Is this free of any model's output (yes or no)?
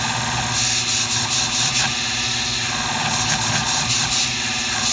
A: yes